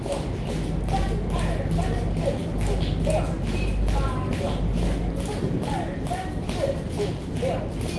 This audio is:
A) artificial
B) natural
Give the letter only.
B